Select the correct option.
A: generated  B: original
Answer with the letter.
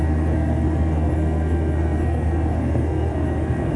A